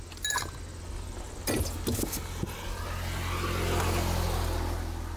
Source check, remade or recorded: recorded